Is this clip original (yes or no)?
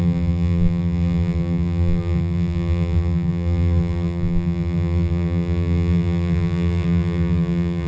no